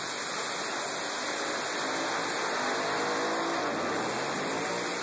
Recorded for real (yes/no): yes